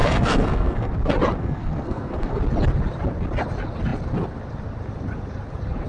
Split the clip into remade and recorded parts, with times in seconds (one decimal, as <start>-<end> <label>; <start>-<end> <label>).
0.0-0.9 remade; 0.9-1.4 recorded; 1.4-2.4 remade; 2.4-5.9 recorded